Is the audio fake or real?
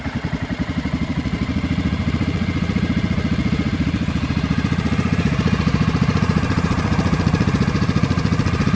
fake